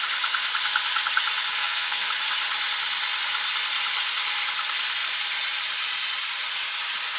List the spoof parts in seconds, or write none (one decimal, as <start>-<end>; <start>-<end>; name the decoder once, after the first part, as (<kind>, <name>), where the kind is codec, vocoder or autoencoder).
1.6-2.1 (codec, SNAC)